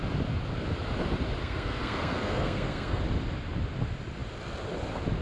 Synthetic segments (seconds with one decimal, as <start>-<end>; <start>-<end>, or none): 1.4-3.0